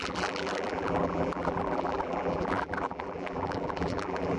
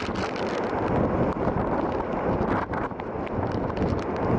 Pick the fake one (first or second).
first